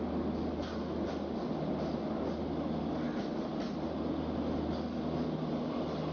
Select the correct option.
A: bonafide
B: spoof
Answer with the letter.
A